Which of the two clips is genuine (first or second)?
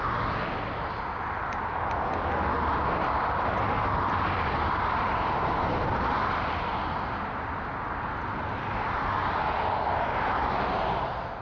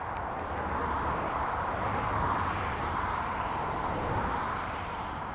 first